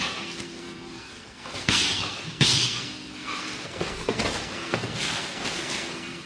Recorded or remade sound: remade